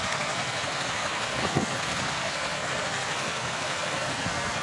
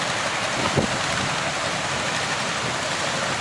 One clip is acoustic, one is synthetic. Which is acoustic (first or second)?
second